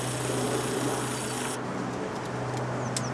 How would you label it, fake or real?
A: real